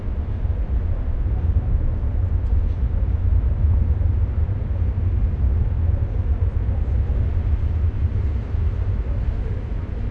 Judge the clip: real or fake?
fake